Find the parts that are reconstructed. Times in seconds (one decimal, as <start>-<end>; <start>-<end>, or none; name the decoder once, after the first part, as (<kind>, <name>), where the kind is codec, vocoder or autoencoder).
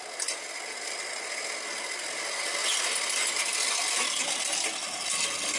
none